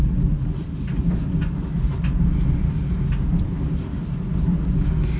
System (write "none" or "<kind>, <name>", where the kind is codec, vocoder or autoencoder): none